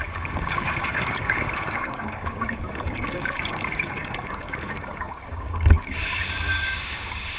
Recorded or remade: remade